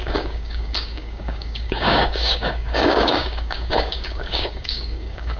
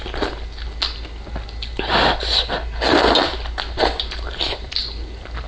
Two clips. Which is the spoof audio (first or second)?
first